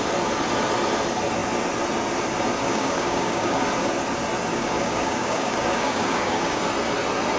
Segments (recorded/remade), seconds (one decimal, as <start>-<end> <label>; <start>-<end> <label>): 0.0-2.6 recorded; 2.6-3.6 remade; 3.6-4.5 recorded; 4.5-6.6 remade; 6.6-7.4 recorded